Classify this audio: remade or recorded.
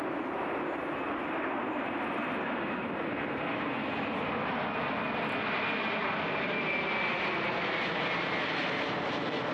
recorded